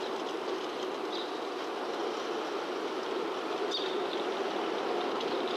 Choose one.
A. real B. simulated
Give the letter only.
A